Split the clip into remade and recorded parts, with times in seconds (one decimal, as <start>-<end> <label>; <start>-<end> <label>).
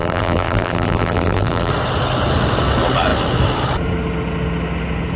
0.0-1.7 remade; 1.7-5.2 recorded